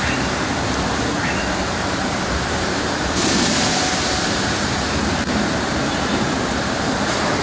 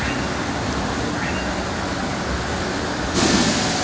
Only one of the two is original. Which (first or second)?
second